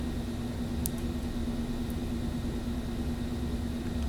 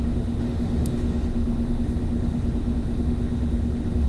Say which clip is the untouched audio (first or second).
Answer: first